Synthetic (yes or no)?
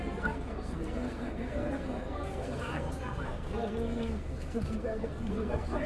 yes